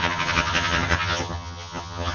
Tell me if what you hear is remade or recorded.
remade